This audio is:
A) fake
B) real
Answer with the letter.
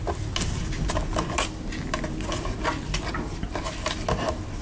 B